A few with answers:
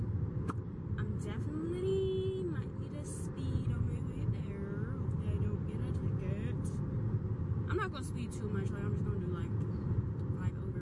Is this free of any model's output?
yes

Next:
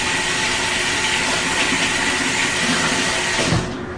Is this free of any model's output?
yes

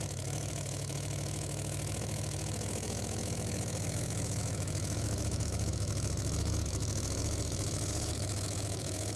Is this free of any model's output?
no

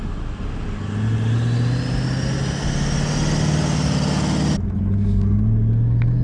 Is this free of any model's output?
yes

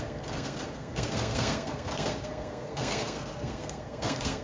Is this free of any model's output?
no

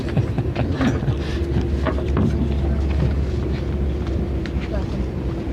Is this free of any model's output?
yes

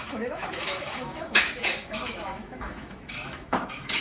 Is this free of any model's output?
no